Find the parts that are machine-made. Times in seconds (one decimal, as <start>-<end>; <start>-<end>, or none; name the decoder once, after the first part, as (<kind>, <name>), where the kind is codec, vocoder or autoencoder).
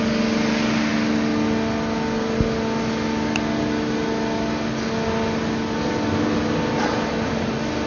none